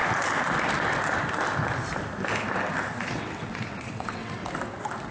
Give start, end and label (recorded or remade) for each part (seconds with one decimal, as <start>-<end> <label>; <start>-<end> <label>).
0.0-3.1 recorded; 3.1-4.4 remade; 4.4-5.1 recorded